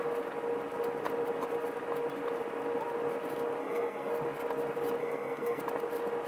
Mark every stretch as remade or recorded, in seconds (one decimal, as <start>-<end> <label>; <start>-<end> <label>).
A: 0.0-3.6 recorded; 3.6-4.1 remade; 4.1-5.0 recorded; 5.0-5.6 remade; 5.6-6.3 recorded